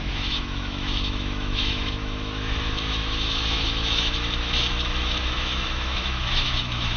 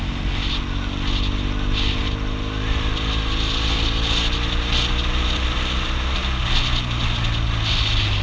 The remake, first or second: first